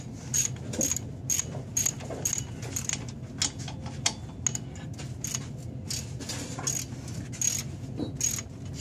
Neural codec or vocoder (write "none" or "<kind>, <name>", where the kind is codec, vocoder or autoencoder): none